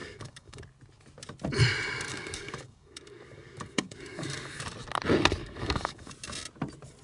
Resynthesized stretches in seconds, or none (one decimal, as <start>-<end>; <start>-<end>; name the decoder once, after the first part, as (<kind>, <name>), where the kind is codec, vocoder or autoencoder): 0.0-0.6 (codec, DAC); 2.1-4.6; 5.4-6.1